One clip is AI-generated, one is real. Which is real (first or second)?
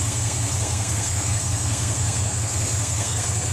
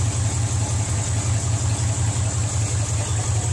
second